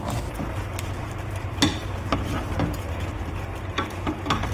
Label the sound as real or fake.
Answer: fake